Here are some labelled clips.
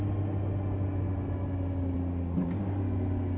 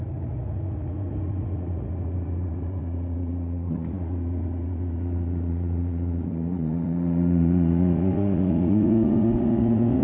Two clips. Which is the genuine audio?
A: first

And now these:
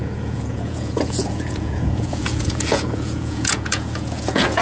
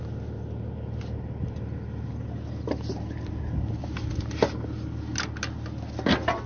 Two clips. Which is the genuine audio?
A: second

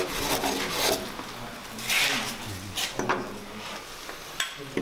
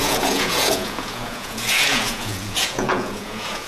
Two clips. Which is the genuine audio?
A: first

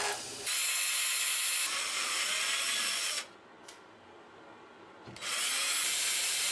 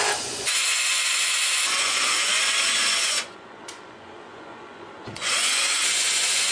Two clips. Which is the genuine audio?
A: first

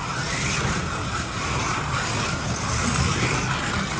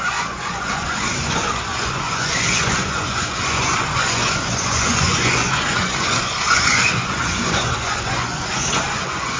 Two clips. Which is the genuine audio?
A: first